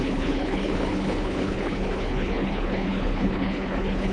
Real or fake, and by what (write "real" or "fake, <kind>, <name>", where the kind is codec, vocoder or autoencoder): fake, codec, HILCodec